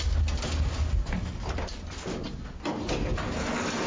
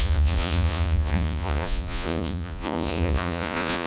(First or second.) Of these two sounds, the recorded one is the first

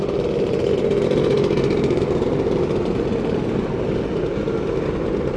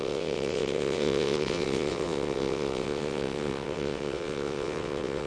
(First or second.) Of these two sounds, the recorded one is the first